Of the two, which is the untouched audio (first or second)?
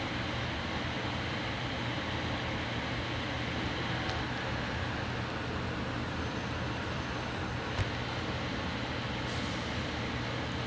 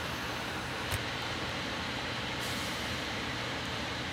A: first